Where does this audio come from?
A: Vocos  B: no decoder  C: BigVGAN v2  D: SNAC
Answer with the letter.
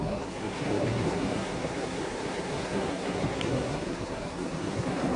D